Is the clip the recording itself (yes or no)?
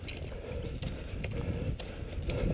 yes